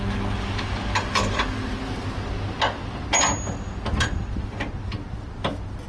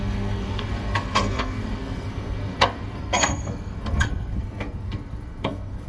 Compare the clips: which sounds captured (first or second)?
first